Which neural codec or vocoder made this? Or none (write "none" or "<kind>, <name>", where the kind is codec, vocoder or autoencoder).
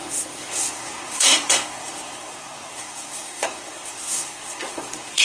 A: codec, SNAC